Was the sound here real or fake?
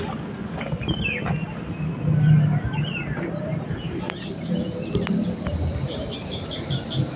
real